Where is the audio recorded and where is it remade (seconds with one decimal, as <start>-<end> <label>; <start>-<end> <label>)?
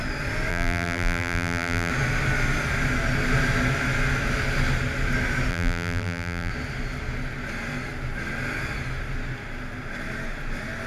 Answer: 0.0-0.5 recorded; 0.5-1.9 remade; 1.9-5.5 recorded; 5.5-6.5 remade; 6.5-10.9 recorded